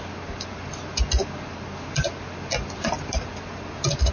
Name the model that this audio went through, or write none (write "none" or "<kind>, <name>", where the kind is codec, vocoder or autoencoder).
none